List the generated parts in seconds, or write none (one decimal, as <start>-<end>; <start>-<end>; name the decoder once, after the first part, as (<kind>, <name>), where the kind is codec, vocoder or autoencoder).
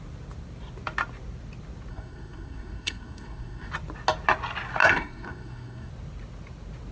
1.9-3.7 (codec, SNAC); 4.8-5.9